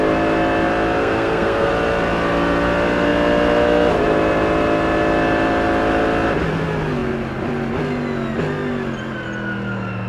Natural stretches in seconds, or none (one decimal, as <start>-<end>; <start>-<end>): 0.0-1.0; 1.7-10.1